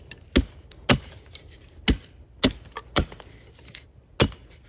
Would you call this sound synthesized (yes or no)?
no